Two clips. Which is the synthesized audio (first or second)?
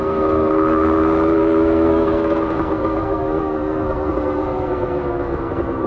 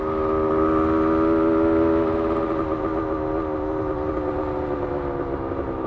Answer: first